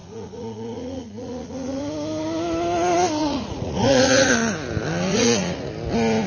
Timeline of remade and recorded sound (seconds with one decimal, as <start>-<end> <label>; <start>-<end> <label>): 0.0-1.8 remade; 1.8-3.2 recorded; 3.2-4.3 remade; 4.3-5.1 recorded; 5.1-5.7 remade; 5.7-6.3 recorded